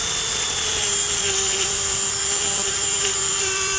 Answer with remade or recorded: remade